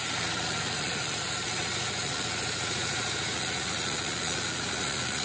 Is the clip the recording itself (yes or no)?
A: no